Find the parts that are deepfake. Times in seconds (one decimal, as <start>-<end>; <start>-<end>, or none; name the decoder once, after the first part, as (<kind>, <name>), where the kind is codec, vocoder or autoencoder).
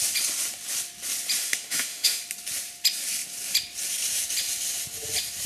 1.4-2.2 (autoencoder, DAC-VAE)